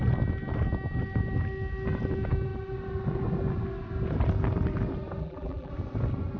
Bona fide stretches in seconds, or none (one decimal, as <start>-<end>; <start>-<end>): 0.0-5.2; 5.7-6.4